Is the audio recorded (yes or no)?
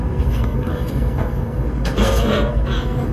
no